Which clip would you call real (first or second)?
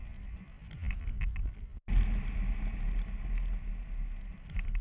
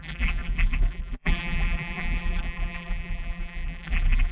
first